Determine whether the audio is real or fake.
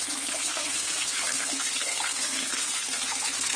fake